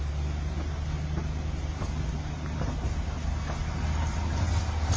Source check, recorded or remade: recorded